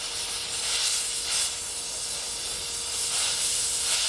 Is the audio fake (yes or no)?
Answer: no